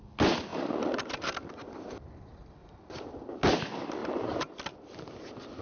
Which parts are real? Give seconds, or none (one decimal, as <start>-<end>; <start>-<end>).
0.0-2.6; 3.5-4.0